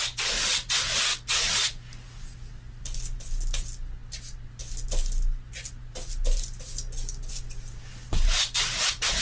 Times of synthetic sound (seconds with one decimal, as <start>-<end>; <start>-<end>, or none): none